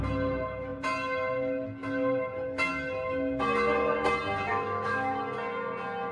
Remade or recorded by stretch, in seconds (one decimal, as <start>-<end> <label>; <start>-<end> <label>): 0.0-4.5 recorded; 4.5-5.2 remade; 5.2-6.1 recorded